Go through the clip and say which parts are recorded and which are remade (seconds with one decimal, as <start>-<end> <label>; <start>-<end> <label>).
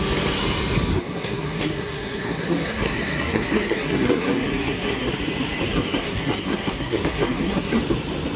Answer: 0.0-0.9 recorded; 0.9-5.1 remade; 5.1-5.7 recorded; 5.7-7.7 remade; 7.7-8.4 recorded